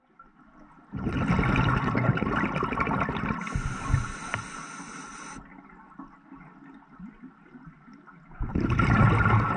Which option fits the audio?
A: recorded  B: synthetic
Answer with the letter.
A